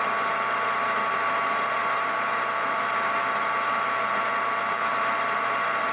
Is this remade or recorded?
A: remade